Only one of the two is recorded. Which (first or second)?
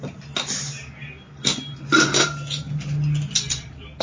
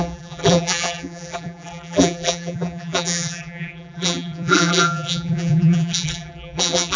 first